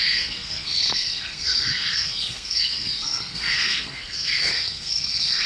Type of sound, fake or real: fake